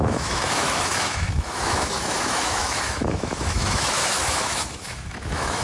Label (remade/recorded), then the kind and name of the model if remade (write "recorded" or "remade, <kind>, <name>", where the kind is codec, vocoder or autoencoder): remade, autoencoder, DAC-VAE